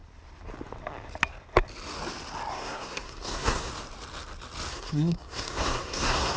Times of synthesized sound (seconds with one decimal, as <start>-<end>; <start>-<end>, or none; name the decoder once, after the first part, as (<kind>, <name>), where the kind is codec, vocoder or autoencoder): 2.5-3.7 (codec, SNAC); 4.7-6.4